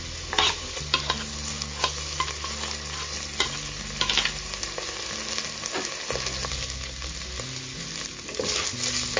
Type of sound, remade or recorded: recorded